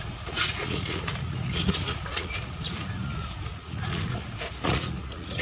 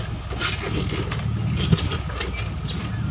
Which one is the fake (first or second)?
first